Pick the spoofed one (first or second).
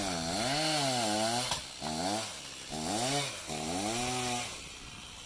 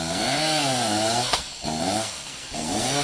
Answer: second